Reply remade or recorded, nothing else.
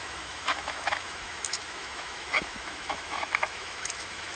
remade